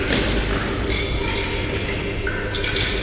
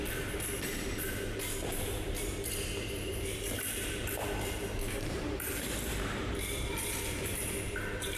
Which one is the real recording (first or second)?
first